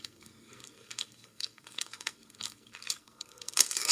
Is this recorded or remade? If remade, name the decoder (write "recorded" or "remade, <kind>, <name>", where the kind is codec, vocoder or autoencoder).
remade, codec, SNAC